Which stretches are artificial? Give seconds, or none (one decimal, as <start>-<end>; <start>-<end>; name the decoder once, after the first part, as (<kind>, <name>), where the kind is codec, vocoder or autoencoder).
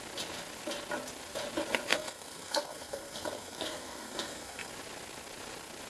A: 1.9-4.7 (codec, SNAC)